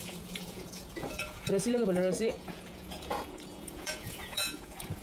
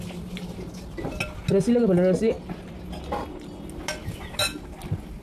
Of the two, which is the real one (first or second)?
second